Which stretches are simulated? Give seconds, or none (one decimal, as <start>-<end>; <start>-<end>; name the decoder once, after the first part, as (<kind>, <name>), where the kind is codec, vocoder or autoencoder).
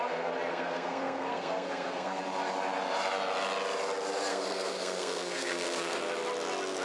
0.5-2.2 (codec, SNAC); 4.3-6.0